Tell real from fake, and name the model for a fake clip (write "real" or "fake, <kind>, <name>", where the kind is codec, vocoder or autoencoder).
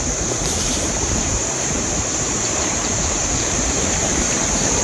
fake, vocoder, BigVGAN v2